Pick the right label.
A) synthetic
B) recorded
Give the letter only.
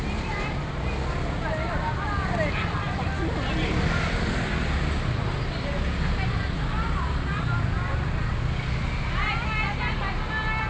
B